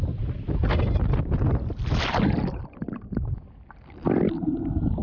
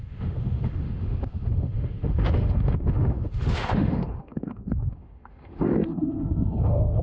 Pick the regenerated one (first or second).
second